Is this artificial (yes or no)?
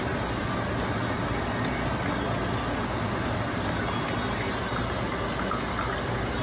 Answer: no